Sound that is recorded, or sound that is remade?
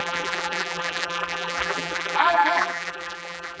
remade